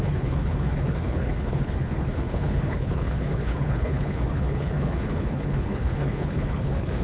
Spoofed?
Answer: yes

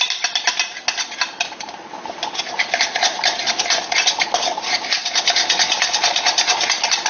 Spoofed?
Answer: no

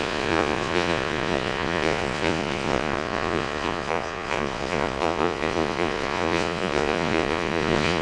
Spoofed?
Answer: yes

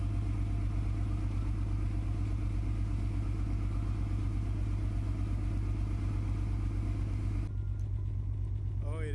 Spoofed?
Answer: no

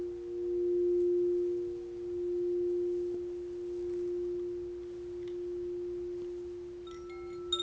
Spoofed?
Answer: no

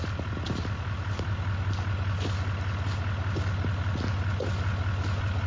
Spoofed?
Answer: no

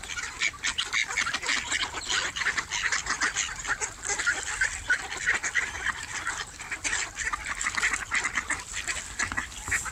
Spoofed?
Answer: no